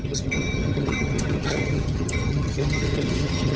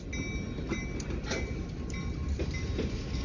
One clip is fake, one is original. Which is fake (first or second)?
first